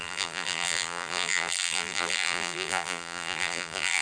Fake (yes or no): yes